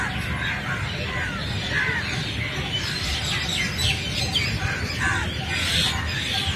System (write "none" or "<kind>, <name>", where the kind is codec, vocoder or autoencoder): none